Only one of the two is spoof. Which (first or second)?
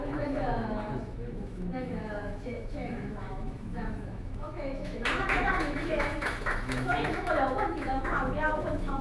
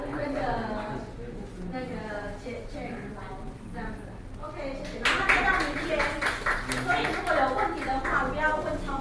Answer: first